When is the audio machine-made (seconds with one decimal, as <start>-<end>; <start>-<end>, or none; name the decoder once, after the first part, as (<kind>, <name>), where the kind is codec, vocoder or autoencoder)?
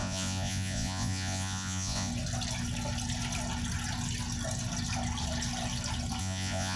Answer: 0.0-2.1 (vocoder, Vocos); 6.2-6.8